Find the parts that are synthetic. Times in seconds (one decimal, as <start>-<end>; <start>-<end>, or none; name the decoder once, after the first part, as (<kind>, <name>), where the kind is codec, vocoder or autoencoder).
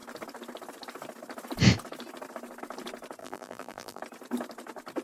3.2-4.0 (vocoder, BigVGAN v2)